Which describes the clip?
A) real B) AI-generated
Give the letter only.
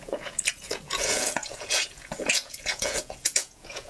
B